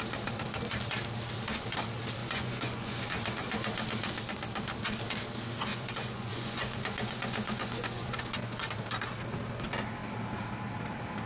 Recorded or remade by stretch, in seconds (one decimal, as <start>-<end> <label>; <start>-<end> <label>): 0.0-2.2 recorded; 2.2-3.0 remade; 3.0-5.7 recorded; 5.7-8.7 remade; 8.7-11.3 recorded